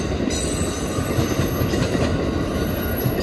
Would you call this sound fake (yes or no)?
no